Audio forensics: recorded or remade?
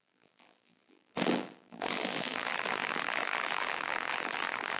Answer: remade